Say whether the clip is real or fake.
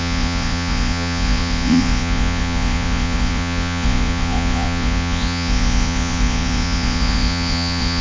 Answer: fake